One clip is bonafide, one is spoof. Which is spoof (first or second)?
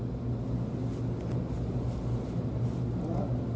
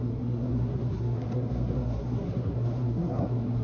second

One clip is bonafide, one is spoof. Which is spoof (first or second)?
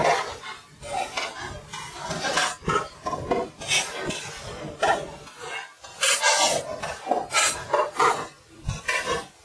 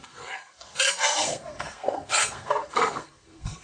second